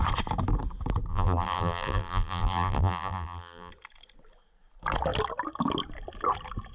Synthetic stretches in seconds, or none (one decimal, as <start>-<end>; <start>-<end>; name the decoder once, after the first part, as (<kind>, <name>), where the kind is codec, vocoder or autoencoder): 1.1-3.7 (vocoder, BigVGAN v2)